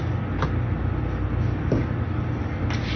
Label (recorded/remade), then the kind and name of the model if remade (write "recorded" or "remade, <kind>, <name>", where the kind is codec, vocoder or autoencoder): recorded